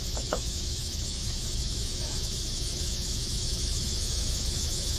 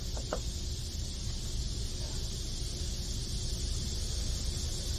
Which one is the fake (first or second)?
first